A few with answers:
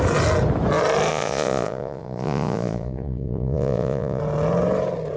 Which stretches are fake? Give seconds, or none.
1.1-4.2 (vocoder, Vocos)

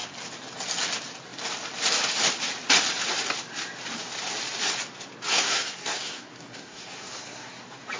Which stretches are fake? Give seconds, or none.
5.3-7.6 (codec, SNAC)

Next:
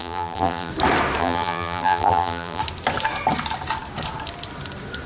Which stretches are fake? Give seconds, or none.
0.0-0.7 (vocoder, BigVGAN v2); 1.2-2.6

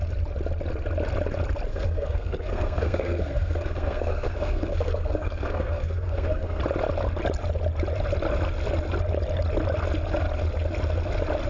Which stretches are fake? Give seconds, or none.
1.7-6.6 (codec, SNAC)

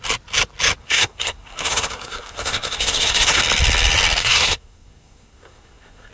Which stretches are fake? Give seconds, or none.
0.8-3.4 (codec, SNAC); 4.2-6.1

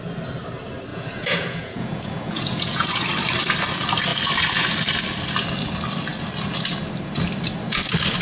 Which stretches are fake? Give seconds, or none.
0.9-3.0 (vocoder, Vocos)